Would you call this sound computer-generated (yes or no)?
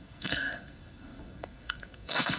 yes